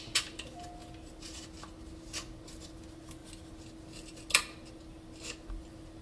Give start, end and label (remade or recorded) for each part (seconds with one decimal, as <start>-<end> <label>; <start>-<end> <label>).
0.0-6.0 recorded